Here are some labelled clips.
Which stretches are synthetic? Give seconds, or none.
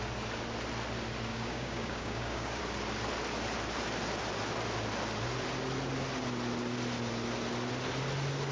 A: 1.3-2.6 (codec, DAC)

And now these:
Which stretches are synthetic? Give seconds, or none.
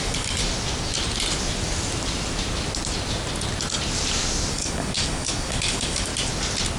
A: 0.0-0.4 (codec, DAC); 4.5-6.1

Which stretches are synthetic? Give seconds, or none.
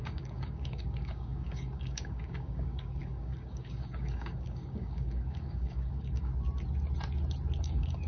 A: 0.0-6.3 (codec, DAC); 7.6-8.1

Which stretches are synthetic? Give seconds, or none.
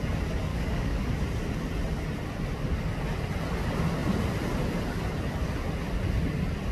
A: 0.5-1.1 (codec, DAC)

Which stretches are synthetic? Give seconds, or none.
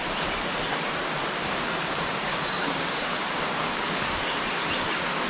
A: 1.4-4.2 (codec, DAC)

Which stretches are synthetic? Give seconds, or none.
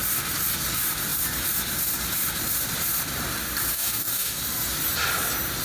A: 3.7-4.4 (codec, DAC)